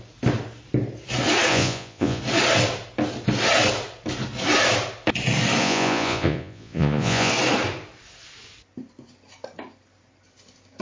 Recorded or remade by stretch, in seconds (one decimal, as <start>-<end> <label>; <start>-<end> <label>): 0.0-1.5 recorded; 1.5-2.2 remade; 2.2-5.6 recorded; 5.6-7.3 remade; 7.3-10.8 recorded